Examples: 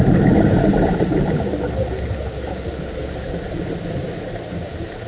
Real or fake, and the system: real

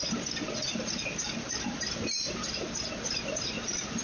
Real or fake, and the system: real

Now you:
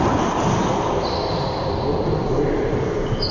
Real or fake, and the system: real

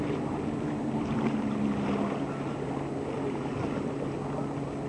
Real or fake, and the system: real